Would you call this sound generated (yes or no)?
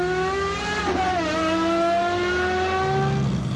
no